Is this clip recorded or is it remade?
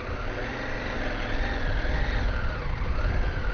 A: recorded